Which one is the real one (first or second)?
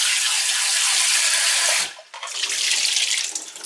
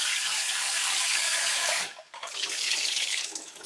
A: first